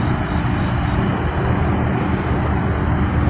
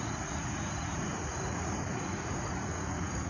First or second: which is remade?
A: second